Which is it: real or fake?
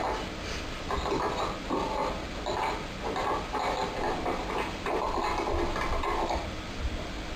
real